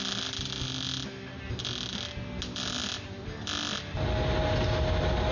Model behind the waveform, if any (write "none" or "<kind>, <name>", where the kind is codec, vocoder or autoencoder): none